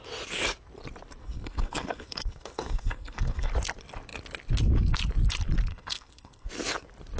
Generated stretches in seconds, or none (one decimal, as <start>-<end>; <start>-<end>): 1.2-3.5; 5.7-6.5

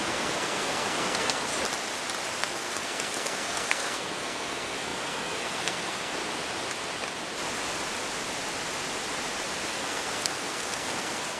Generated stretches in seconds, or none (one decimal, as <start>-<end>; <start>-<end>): 0.0-1.5; 2.4-6.2; 9.7-11.4

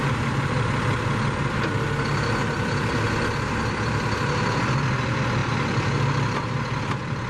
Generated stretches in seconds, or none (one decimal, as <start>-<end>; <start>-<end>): none

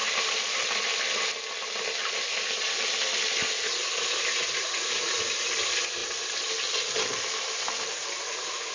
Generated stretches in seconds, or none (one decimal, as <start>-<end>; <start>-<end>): none